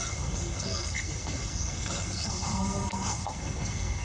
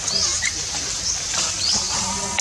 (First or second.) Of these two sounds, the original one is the second